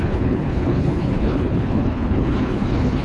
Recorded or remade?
remade